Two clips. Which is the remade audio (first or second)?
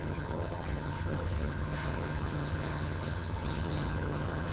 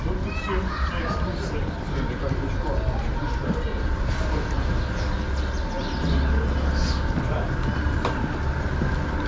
first